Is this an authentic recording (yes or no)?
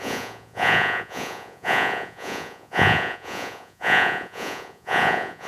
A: no